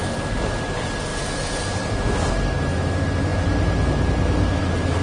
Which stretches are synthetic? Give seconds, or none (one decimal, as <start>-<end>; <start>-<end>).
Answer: none